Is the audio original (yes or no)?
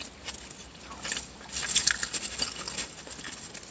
yes